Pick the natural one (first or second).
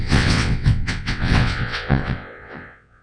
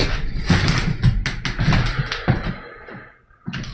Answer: second